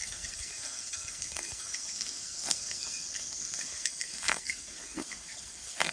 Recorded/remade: remade